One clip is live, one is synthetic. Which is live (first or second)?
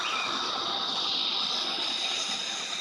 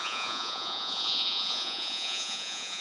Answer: first